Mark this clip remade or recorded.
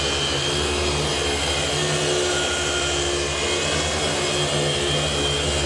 recorded